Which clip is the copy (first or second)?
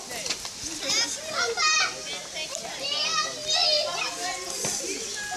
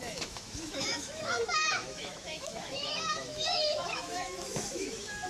second